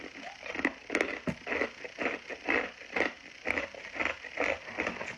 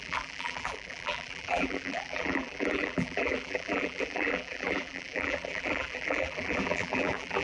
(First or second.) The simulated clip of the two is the second